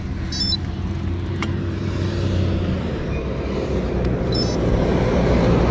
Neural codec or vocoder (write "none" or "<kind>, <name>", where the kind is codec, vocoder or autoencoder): vocoder, BigVGAN v2